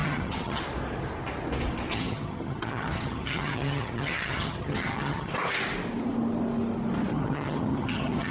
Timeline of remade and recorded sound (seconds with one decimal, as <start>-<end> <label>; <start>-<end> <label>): 0.0-0.6 remade; 0.6-1.9 recorded; 1.9-5.3 remade; 5.3-7.1 recorded; 7.1-8.3 remade